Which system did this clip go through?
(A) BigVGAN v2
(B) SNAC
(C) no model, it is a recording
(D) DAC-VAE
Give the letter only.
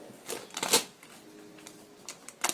C